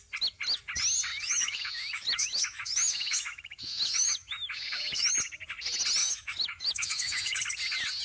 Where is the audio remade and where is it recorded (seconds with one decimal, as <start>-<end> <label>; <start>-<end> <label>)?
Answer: 0.0-1.1 recorded; 1.1-5.1 remade; 5.1-6.0 recorded; 6.0-7.4 remade; 7.4-8.0 recorded